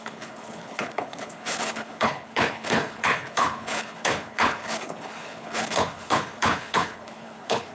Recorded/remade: remade